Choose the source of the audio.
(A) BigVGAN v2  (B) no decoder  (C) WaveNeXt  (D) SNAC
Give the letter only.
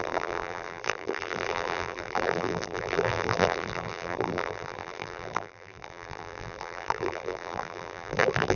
A